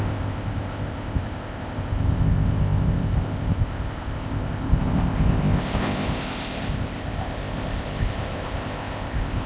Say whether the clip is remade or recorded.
remade